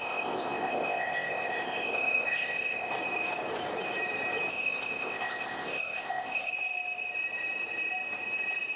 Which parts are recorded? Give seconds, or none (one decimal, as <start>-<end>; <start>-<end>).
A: 2.9-4.5; 6.5-8.8